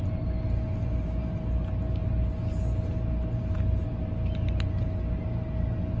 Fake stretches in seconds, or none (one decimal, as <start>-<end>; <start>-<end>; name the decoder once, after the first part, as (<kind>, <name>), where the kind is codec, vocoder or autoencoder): none